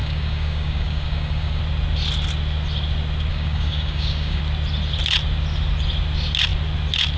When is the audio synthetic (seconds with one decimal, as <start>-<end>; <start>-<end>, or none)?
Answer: 0.0-1.6; 3.3-4.4

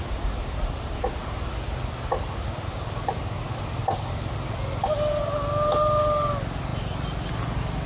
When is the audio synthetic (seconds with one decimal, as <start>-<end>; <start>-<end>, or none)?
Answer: none

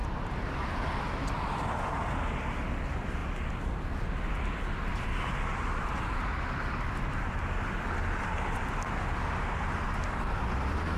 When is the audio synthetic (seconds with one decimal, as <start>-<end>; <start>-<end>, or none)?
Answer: none

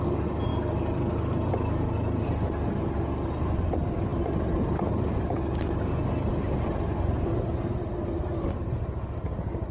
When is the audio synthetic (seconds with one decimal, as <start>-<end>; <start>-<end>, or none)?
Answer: none

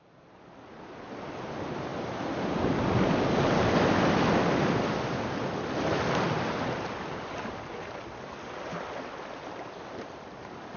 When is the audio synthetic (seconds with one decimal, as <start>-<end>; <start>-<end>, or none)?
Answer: none

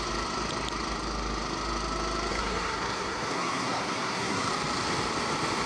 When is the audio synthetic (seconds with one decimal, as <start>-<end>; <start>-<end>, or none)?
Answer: 2.3-4.5

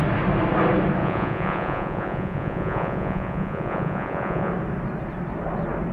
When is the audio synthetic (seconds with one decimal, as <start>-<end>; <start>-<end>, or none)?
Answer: 1.0-4.5

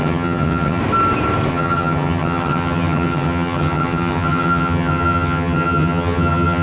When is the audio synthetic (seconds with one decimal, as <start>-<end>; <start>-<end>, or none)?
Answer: 0.0-0.8; 1.5-6.6